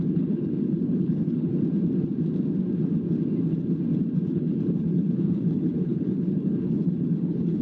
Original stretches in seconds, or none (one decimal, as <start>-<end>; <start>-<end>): 1.5-4.3